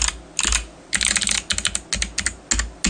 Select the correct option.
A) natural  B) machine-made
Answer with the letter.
A